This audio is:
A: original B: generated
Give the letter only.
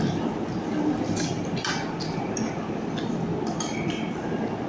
A